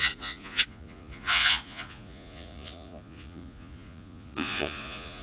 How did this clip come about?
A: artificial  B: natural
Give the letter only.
A